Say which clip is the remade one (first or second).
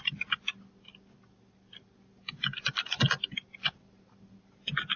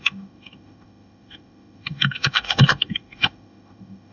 second